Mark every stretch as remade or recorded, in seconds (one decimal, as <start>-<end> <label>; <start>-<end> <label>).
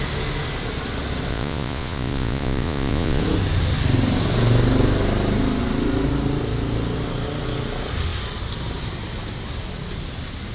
0.0-1.3 recorded; 1.3-3.2 remade; 3.2-10.5 recorded